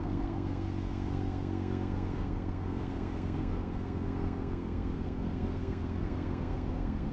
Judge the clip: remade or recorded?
remade